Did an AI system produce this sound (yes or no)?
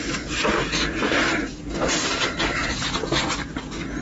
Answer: no